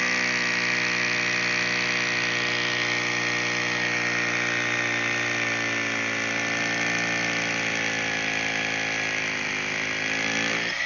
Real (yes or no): yes